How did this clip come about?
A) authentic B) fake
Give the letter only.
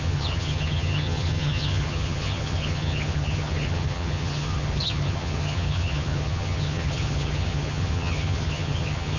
B